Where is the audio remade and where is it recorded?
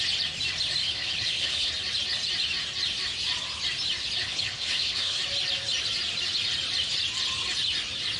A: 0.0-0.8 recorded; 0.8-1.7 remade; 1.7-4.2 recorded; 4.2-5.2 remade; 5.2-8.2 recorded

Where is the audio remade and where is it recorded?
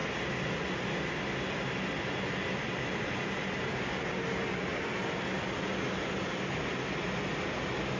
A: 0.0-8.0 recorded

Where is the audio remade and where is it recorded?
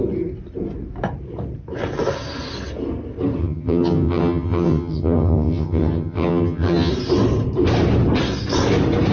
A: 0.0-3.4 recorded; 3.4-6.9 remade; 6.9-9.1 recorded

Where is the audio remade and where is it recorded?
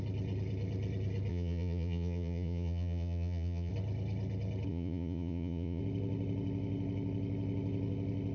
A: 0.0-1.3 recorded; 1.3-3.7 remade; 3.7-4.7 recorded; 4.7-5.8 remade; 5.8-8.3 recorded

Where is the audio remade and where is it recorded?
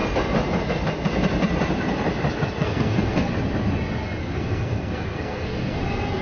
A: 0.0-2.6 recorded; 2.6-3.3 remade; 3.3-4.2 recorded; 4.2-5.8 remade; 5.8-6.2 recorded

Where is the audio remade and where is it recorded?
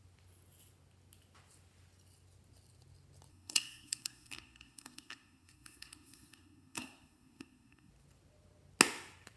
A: 0.0-3.3 recorded; 3.3-7.9 remade; 7.9-9.4 recorded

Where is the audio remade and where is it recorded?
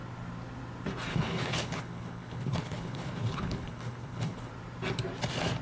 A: 0.0-1.1 recorded; 1.1-4.5 remade; 4.5-5.6 recorded